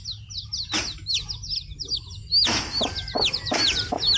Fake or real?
real